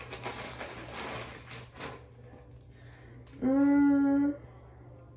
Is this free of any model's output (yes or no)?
yes